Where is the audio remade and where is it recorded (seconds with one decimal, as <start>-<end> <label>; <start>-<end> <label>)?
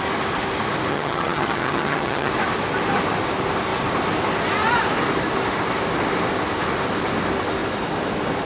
0.0-0.9 recorded; 0.9-2.3 remade; 2.3-8.4 recorded